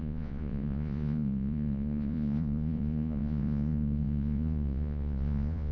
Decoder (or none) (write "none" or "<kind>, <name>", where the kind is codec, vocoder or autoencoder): vocoder, Vocos